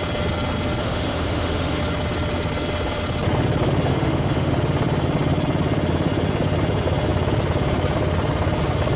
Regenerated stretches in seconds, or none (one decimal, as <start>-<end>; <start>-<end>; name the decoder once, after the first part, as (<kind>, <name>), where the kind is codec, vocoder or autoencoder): 0.8-1.8 (autoencoder, DAC-VAE); 3.9-4.5